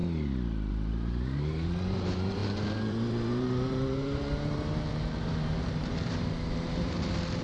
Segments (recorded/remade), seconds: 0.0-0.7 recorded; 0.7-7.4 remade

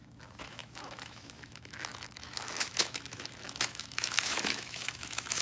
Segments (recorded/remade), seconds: 0.0-5.4 remade

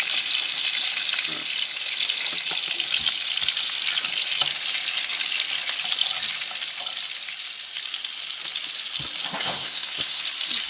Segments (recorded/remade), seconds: 0.0-9.4 recorded; 9.4-10.2 remade; 10.2-10.7 recorded

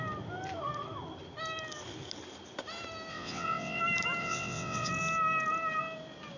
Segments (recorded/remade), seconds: 0.0-3.1 recorded; 3.1-3.8 remade; 3.8-4.2 recorded; 4.2-4.9 remade; 4.9-6.4 recorded

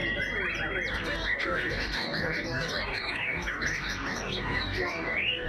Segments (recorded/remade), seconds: 0.0-0.9 recorded; 0.9-5.5 remade

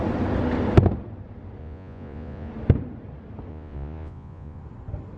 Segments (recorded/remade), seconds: 0.0-1.6 recorded; 1.6-2.5 remade; 2.5-3.5 recorded; 3.5-4.6 remade; 4.6-5.2 recorded